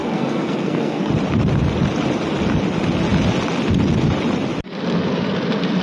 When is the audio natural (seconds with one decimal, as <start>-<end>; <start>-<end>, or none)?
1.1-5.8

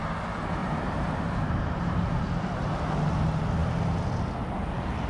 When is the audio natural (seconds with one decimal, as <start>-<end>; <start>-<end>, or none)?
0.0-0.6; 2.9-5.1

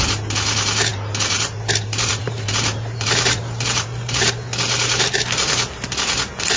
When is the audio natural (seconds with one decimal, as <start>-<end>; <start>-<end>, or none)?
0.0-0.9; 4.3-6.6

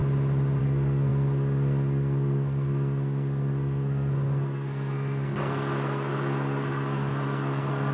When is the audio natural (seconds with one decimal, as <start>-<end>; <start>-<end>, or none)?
0.0-0.6

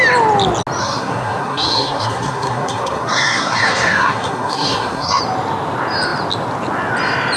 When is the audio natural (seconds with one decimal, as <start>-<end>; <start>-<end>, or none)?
0.0-0.8; 5.2-7.4